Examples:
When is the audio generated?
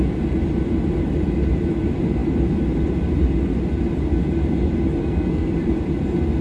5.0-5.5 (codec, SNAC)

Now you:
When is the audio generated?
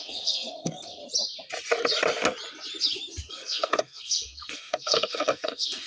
0.0-1.0 (codec, SNAC); 3.3-5.9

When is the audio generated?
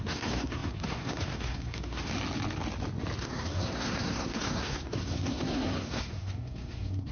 0.0-2.1 (codec, SNAC); 3.2-7.1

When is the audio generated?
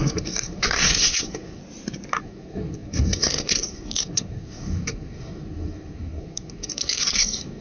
0.0-1.6 (codec, SNAC); 2.2-7.6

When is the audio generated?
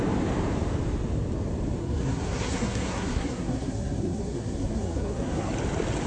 1.8-5.5 (codec, SNAC)